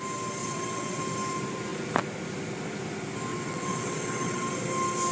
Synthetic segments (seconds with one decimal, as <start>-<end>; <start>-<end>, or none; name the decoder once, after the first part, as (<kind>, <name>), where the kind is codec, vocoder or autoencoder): 0.4-1.0 (vocoder, WaveNeXt); 3.3-4.5